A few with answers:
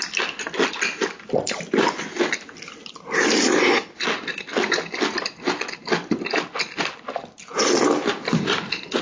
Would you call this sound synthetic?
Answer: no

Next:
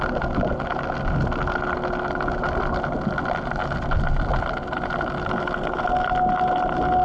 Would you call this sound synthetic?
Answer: no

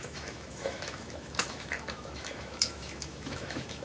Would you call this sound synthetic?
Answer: yes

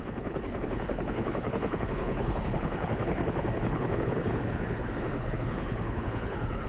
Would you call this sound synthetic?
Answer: yes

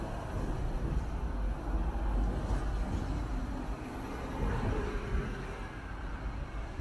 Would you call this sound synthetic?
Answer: no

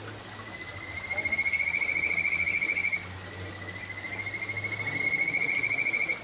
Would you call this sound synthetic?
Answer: no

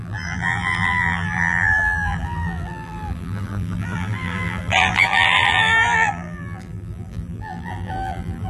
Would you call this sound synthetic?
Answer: yes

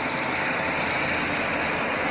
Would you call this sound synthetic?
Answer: no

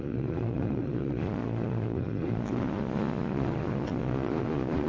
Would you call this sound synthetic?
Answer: yes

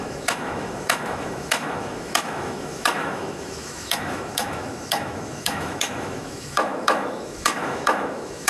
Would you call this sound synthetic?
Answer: yes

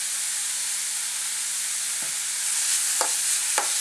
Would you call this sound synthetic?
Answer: no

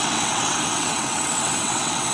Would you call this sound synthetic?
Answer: yes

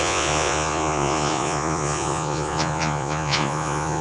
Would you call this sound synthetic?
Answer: yes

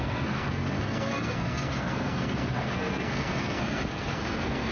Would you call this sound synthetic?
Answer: yes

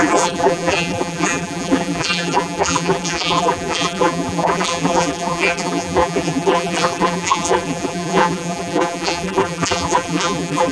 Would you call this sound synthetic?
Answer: yes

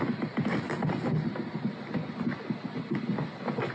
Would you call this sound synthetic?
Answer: no